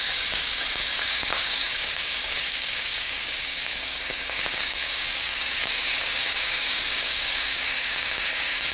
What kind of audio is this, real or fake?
fake